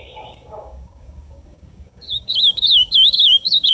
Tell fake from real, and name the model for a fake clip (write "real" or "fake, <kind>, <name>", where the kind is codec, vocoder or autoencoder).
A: fake, codec, DAC